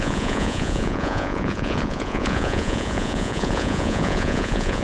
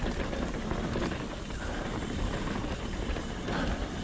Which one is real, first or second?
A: second